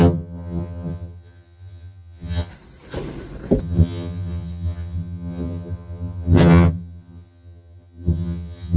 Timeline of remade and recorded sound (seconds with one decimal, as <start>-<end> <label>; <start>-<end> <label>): 0.0-2.5 remade; 2.5-3.6 recorded; 3.6-8.8 remade